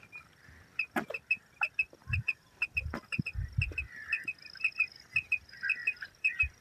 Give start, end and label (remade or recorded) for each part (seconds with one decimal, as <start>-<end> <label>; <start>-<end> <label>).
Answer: 0.0-2.0 recorded; 2.0-3.2 remade; 3.2-5.8 recorded; 5.8-6.6 remade